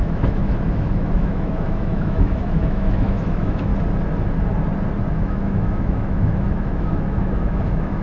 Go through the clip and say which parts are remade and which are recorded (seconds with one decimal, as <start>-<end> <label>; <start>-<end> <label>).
0.0-3.7 remade; 3.7-5.1 recorded; 5.1-8.0 remade